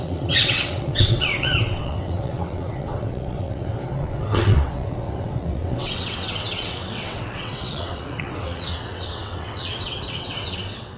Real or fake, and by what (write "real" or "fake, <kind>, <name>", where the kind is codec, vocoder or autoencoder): fake, vocoder, WaveNeXt